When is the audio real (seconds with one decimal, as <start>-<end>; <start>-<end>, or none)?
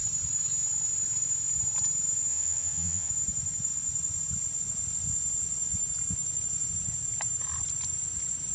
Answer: 0.0-2.3; 3.1-8.5